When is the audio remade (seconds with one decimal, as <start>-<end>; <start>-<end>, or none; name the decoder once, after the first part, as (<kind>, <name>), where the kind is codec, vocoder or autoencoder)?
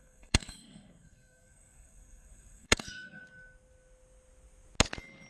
0.0-3.2 (codec, SNAC)